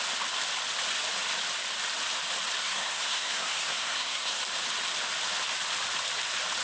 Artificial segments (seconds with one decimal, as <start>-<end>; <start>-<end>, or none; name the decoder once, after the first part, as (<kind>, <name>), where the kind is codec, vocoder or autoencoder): 2.6-4.4 (codec, SNAC)